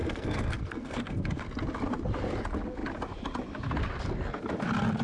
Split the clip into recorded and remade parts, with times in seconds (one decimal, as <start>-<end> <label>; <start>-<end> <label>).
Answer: 0.0-1.4 remade; 1.4-5.0 recorded